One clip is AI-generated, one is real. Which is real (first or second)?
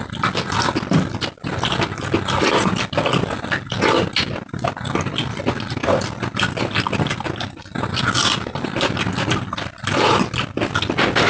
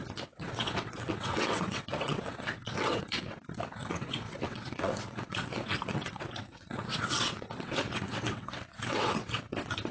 first